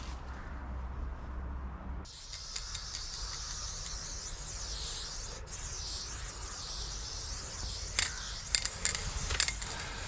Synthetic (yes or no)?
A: no